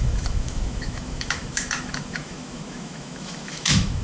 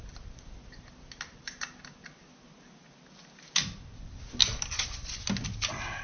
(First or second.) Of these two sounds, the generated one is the first